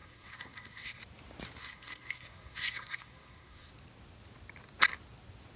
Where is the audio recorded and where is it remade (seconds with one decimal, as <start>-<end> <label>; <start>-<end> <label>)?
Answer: 0.0-1.0 remade; 1.0-1.6 recorded; 1.6-3.7 remade; 3.7-5.6 recorded